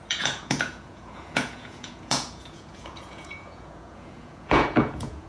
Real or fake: fake